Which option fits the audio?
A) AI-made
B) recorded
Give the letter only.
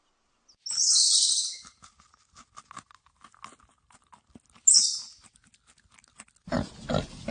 B